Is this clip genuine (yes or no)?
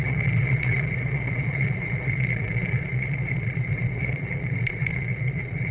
no